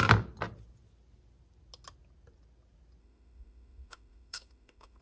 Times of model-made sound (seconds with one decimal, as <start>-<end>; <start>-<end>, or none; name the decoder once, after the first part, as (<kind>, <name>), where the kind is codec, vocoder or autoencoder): 3.0-5.0 (autoencoder, DAC-VAE)